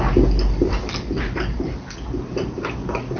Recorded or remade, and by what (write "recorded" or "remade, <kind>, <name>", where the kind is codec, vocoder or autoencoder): recorded